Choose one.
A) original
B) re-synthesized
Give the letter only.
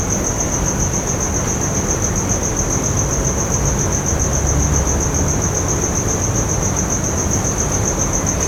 A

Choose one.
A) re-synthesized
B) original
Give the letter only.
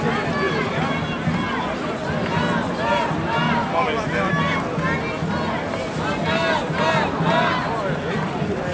B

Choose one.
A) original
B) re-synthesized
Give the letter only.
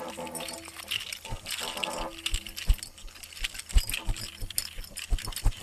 A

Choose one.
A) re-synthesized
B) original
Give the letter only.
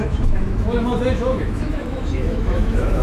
A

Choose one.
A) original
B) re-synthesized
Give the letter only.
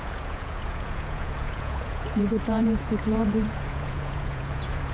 B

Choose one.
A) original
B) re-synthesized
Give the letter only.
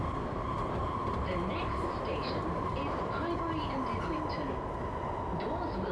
A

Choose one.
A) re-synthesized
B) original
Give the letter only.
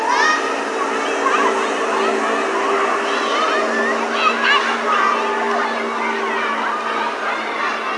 B